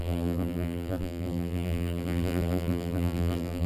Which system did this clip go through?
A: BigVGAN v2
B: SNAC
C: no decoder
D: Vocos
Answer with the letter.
A